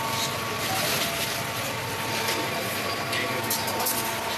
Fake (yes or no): no